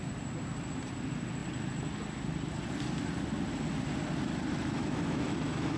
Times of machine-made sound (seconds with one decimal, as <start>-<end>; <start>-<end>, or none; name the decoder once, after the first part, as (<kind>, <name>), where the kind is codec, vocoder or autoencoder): 4.8-5.8 (autoencoder, DAC-VAE)